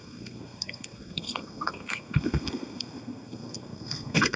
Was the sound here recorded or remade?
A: remade